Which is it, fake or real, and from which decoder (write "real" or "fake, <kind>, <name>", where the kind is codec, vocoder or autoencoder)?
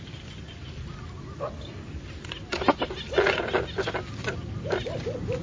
real